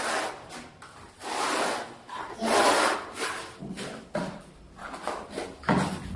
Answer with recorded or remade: recorded